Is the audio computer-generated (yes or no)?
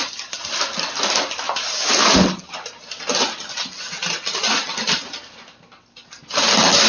no